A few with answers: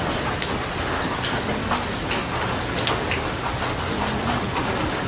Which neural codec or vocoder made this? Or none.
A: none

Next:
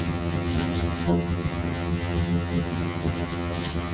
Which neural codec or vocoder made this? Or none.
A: vocoder, HiFi-GAN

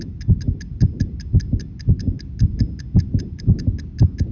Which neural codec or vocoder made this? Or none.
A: none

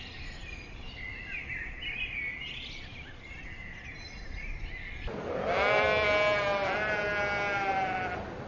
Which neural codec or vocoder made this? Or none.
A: none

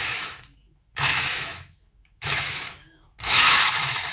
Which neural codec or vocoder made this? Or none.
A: autoencoder, DAC-VAE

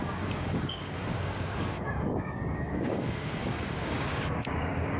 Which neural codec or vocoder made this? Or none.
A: codec, DAC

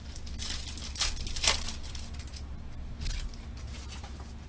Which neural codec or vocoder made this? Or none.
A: none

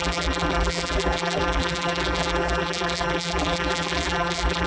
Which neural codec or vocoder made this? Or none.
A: vocoder, BigVGAN v2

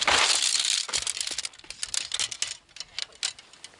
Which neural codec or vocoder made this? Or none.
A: none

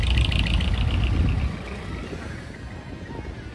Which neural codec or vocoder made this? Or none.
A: none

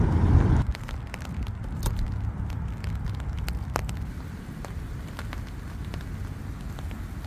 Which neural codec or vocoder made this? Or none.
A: none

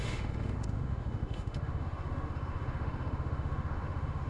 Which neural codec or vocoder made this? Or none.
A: autoencoder, DAC-VAE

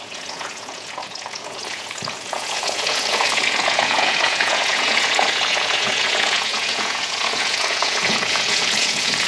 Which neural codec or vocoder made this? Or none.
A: vocoder, Vocos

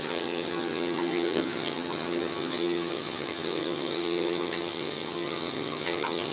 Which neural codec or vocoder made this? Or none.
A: vocoder, HiFi-GAN